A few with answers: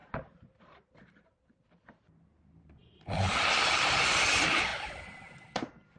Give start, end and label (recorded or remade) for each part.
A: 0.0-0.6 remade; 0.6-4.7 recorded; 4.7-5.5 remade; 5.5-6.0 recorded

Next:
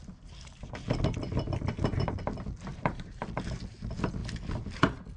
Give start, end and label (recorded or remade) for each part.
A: 0.0-2.7 recorded; 2.7-3.2 remade; 3.2-5.2 recorded